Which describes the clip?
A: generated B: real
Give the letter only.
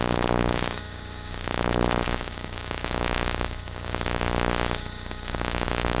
A